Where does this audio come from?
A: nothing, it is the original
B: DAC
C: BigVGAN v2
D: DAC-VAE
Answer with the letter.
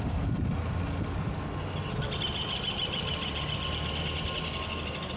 A